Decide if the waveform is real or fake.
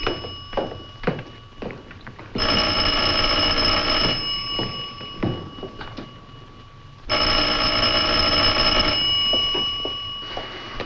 real